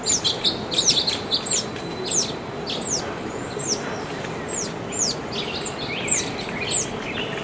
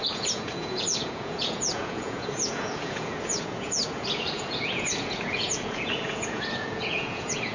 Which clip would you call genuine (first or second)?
first